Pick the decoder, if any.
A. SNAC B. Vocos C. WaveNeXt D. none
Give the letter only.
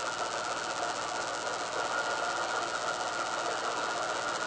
D